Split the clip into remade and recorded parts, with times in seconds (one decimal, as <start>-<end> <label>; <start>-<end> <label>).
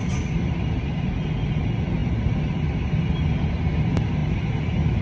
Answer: 0.0-5.0 recorded